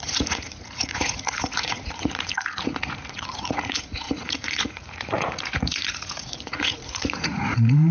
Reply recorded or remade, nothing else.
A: remade